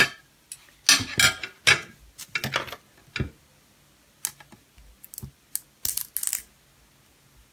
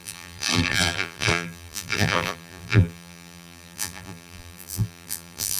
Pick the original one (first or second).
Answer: first